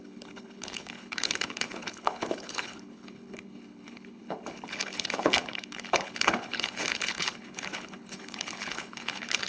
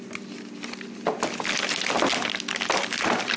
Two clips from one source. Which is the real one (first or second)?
second